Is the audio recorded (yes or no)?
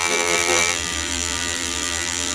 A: no